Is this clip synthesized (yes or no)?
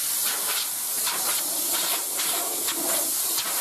no